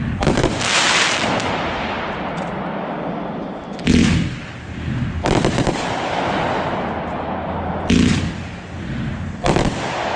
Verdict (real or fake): real